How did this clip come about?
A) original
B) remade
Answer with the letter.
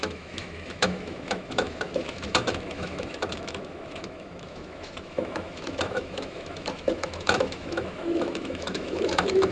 B